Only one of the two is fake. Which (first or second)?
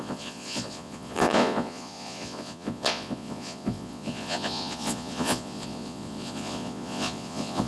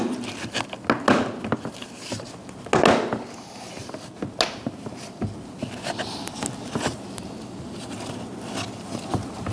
first